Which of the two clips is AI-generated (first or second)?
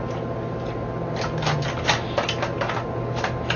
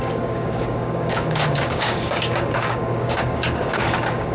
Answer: second